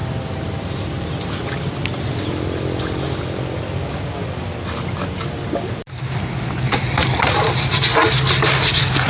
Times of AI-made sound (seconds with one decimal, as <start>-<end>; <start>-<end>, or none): none